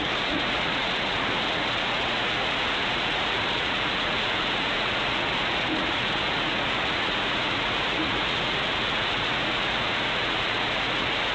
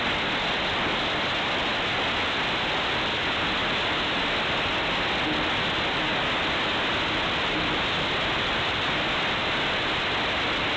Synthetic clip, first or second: first